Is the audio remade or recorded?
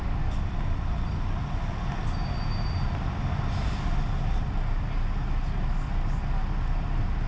recorded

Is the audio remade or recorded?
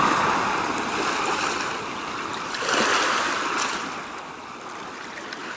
recorded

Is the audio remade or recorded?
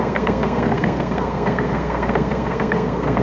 remade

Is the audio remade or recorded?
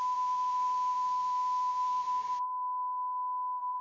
remade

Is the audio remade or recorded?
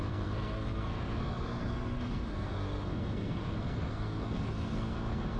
remade